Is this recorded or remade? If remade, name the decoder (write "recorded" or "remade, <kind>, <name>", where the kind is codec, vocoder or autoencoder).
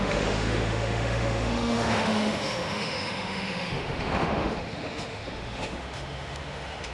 remade, autoencoder, DAC-VAE